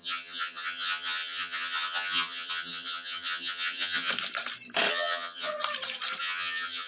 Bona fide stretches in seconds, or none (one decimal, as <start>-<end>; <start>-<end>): 4.1-4.9; 5.5-6.2